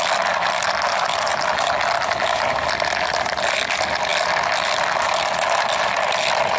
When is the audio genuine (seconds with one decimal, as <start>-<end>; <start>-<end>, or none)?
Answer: 0.0-6.6